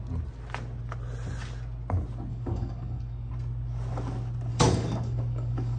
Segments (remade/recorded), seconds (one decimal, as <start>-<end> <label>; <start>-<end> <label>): 0.0-2.3 recorded; 2.3-3.3 remade; 3.3-4.5 recorded; 4.5-5.8 remade